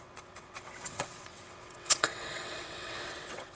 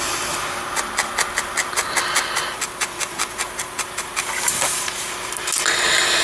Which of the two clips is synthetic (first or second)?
first